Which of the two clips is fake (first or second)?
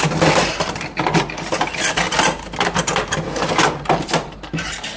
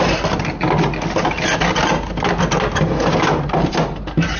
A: first